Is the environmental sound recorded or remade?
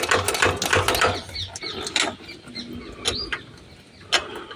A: recorded